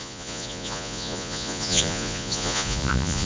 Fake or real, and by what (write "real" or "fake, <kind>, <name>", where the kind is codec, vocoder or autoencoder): fake, vocoder, Vocos